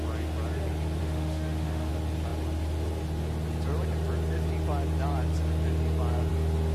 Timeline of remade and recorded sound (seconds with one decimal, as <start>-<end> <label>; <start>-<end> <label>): 0.0-1.0 recorded; 1.0-1.9 remade; 1.9-6.7 recorded